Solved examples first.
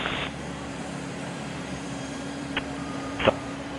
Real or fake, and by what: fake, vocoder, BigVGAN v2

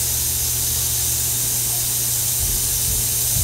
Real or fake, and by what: real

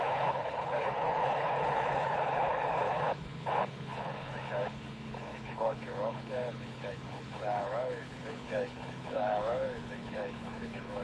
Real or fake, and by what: fake, codec, HILCodec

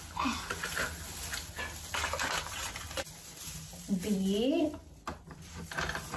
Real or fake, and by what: real